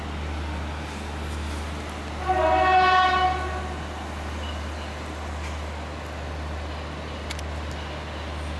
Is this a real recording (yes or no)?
yes